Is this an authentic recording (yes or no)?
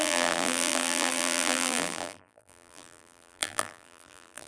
no